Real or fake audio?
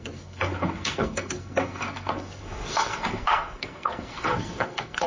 fake